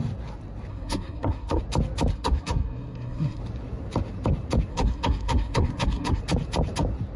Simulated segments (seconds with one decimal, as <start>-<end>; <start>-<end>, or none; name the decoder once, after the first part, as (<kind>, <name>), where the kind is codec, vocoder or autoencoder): 0.7-1.6 (codec, SNAC); 2.1-3.4; 4.7-6.2